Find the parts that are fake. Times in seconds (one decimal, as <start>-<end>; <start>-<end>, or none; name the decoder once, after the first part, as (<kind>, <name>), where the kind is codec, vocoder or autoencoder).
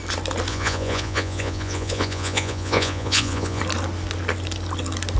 0.5-3.6 (vocoder, Vocos)